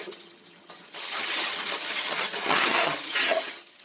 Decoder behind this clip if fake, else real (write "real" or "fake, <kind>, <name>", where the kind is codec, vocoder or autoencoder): fake, vocoder, HiFi-GAN